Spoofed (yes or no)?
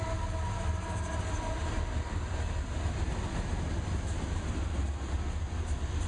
no